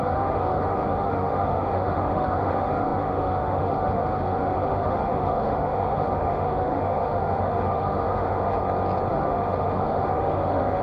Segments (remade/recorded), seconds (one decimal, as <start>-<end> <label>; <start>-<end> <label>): 0.0-8.6 remade; 8.6-9.1 recorded; 9.1-10.8 remade